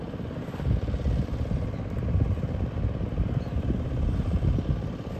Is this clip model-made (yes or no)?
no